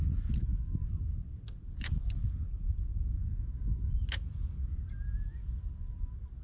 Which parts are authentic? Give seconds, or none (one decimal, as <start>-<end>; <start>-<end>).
0.0-6.4